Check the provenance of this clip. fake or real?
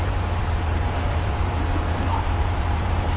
fake